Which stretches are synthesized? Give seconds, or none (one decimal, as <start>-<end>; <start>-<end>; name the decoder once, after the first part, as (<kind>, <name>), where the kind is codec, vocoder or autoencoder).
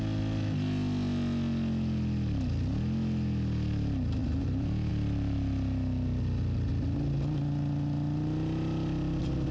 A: 4.2-4.9 (vocoder, BigVGAN v2)